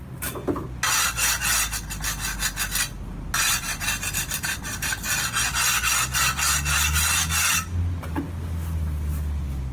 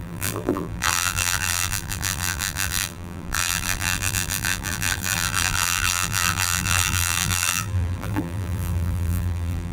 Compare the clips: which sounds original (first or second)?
first